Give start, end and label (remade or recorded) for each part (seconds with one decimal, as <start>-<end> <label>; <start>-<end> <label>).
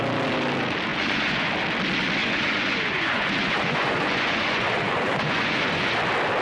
0.0-0.9 recorded; 0.9-1.5 remade; 1.5-2.2 recorded; 2.2-5.9 remade; 5.9-6.4 recorded